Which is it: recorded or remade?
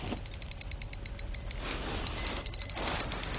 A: recorded